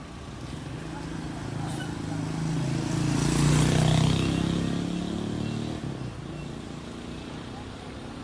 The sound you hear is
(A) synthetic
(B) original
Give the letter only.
B